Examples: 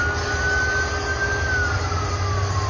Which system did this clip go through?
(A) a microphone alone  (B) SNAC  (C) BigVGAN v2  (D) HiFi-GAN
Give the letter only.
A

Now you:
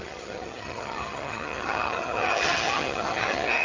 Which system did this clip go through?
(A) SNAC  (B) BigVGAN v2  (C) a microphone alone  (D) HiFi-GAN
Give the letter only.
D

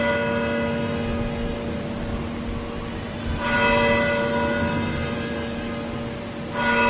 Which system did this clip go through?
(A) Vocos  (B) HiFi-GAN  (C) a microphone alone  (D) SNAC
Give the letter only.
C